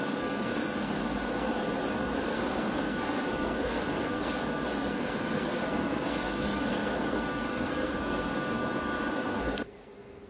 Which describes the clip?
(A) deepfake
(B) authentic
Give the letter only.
A